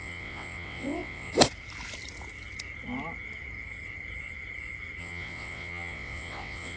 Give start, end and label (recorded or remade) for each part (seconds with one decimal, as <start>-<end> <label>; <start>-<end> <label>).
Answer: 0.0-1.3 remade; 1.3-5.0 recorded; 5.0-6.8 remade